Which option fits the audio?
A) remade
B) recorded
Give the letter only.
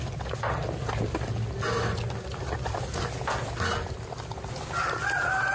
B